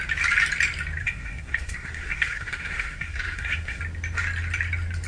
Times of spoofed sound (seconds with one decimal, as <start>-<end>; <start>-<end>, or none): 1.0-3.8

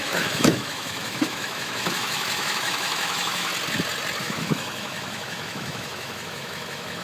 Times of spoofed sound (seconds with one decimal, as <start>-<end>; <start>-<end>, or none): 0.0-3.5; 4.2-7.0

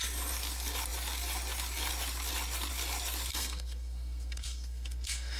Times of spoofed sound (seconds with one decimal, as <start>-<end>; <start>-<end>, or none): 3.3-5.4

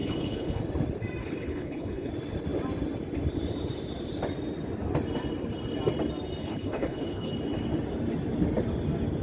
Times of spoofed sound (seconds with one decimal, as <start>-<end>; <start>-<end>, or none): 0.0-0.6; 1.2-2.1; 6.4-7.3

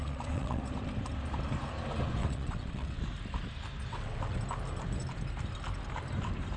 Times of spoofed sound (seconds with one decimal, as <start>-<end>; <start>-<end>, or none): 0.0-0.6; 2.2-3.0; 3.9-4.4

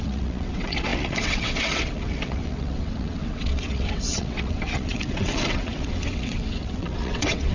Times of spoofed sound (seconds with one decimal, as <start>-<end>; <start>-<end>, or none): 0.0-7.5

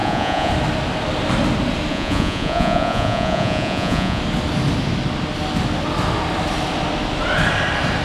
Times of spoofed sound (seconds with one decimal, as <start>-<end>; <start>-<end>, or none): 0.0-0.5; 1.9-4.2